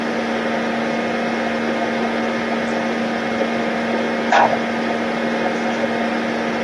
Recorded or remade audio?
recorded